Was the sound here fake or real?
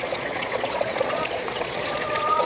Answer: fake